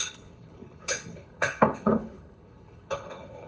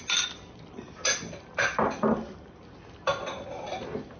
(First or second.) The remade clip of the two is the first